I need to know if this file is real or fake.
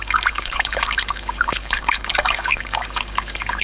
fake